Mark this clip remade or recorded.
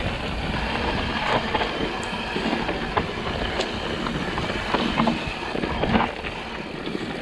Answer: recorded